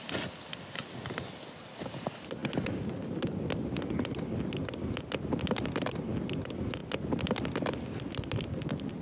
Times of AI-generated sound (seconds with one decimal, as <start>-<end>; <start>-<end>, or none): none